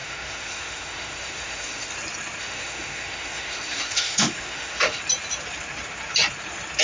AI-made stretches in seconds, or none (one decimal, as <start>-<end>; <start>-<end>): 0.0-1.9; 2.4-5.0